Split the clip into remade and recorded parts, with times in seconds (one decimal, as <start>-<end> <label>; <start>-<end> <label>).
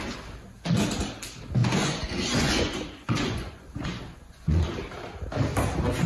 0.0-1.6 recorded; 1.6-4.6 remade; 4.6-6.1 recorded